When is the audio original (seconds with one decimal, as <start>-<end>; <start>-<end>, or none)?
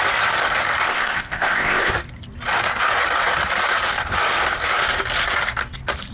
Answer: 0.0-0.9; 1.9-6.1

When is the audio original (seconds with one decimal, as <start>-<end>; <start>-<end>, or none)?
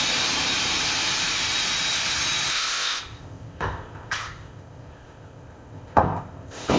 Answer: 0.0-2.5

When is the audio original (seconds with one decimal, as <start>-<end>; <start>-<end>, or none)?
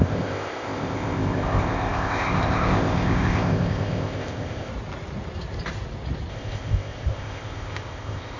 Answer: 4.7-6.3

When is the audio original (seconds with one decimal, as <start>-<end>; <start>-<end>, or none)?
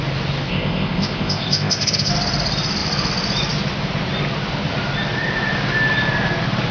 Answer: 0.0-0.5; 2.1-6.7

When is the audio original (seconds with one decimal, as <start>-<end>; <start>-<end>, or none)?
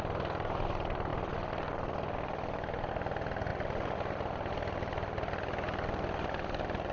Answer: 0.0-6.9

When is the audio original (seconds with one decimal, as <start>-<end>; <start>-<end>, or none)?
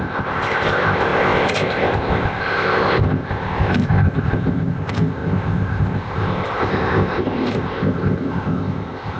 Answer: none